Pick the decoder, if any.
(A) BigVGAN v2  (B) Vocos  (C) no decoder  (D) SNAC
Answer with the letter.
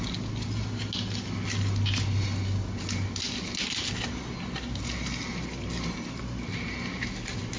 C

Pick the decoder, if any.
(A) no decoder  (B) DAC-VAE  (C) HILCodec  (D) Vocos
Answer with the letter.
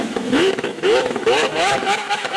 B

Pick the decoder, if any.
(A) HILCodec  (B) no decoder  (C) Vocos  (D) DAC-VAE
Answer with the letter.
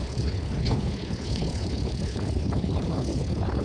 A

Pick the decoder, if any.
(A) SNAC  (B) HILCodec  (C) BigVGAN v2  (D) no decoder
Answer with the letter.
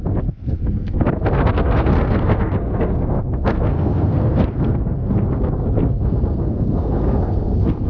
A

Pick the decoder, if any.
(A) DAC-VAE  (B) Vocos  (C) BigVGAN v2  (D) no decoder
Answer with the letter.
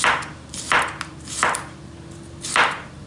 D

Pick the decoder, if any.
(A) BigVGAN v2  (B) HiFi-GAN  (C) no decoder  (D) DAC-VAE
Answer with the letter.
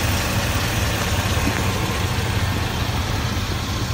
C